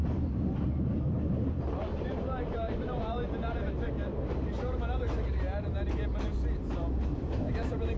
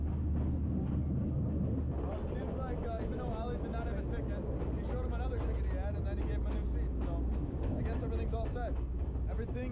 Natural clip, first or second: second